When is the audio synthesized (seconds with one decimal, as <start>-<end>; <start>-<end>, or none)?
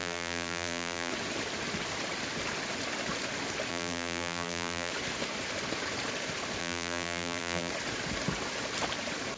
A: 0.0-1.1; 3.7-4.9; 6.6-7.7